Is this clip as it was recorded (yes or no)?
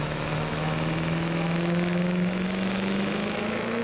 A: no